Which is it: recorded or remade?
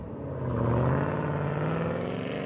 recorded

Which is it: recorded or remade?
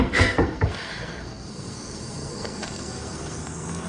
remade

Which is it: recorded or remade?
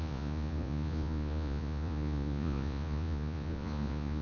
remade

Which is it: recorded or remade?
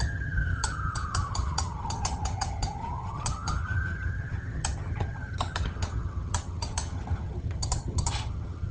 remade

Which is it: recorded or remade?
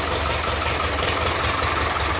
recorded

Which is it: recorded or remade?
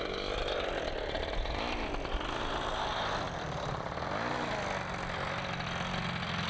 recorded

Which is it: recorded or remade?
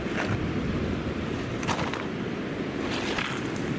recorded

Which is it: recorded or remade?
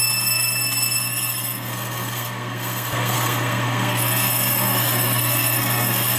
remade